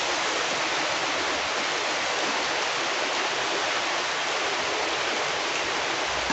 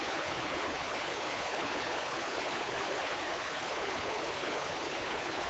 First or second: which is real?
first